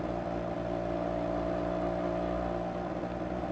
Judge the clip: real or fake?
real